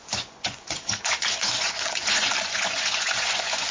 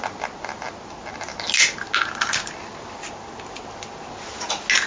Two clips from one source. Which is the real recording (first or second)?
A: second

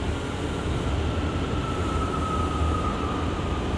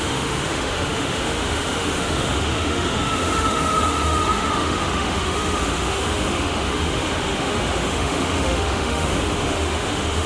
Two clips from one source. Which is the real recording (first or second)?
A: first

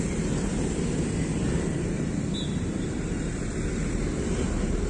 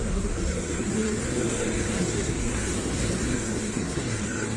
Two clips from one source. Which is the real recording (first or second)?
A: first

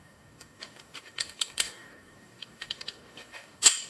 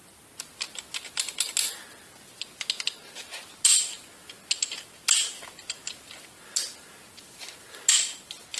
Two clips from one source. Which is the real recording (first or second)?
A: second